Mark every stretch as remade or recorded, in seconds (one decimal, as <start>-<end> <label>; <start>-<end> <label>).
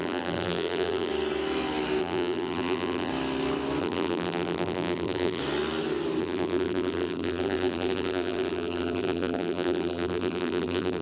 0.0-1.1 remade; 1.1-2.0 recorded; 2.0-3.1 remade; 3.1-3.8 recorded; 3.8-5.4 remade; 5.4-6.2 recorded; 6.2-11.0 remade